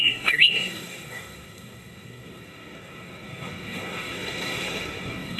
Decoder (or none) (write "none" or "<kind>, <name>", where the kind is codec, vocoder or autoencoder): codec, SNAC